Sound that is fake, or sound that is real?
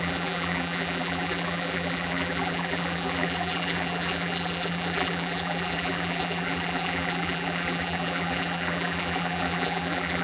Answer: fake